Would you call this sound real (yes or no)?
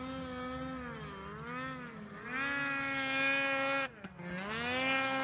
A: yes